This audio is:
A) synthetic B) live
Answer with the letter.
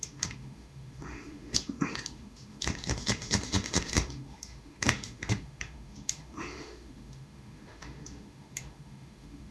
A